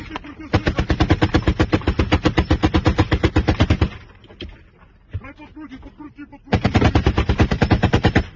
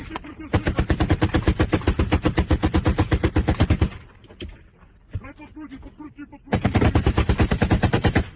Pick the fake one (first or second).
second